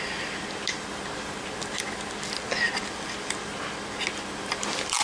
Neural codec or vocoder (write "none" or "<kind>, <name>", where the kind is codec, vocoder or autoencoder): none